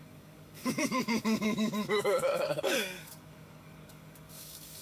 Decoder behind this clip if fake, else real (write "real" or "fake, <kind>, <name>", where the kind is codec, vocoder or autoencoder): fake, codec, DAC